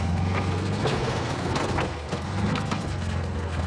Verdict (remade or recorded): remade